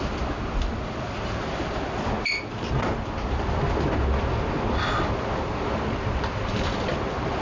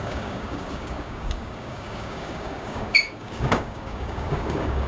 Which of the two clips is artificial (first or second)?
second